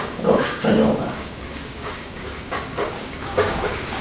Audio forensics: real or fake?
fake